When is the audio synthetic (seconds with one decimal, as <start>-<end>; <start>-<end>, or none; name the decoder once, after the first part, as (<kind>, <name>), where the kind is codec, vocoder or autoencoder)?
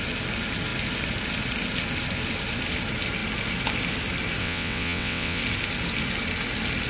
4.4-5.4 (vocoder, WaveNeXt)